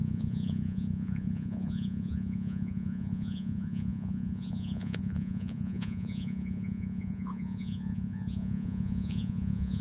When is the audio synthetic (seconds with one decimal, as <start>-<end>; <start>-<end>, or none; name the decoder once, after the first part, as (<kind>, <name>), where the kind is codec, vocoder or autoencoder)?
0.0-9.8 (vocoder, Vocos)